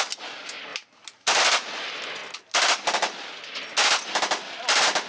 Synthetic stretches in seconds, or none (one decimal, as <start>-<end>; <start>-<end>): none